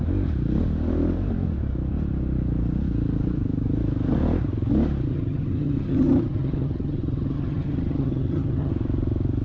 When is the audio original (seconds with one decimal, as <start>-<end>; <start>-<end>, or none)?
0.0-5.1; 8.7-9.4